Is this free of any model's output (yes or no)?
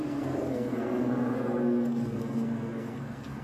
no